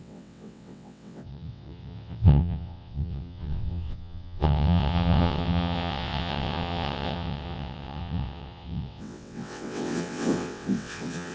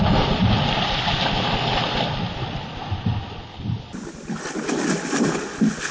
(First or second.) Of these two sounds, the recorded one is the second